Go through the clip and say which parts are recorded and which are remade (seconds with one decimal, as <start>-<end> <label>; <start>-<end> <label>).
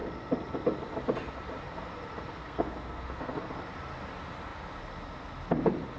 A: 0.0-2.4 recorded; 2.4-3.5 remade; 3.5-6.0 recorded